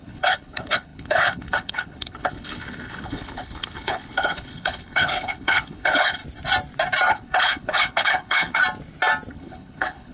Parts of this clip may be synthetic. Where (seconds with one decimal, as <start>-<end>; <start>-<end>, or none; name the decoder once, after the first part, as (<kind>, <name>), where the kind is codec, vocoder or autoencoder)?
0.0-6.2 (codec, HILCodec); 7.1-8.6; 9.3-10.1